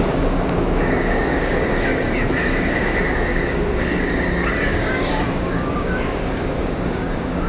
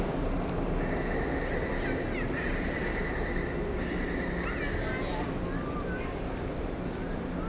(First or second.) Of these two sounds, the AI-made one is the first